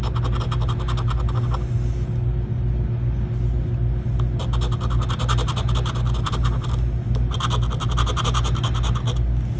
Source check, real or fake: real